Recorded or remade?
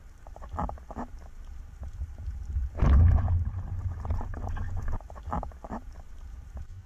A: remade